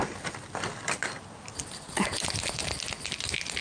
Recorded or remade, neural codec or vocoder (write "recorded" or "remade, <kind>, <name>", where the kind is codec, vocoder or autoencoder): recorded